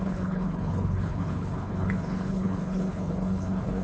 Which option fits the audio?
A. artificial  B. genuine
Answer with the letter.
A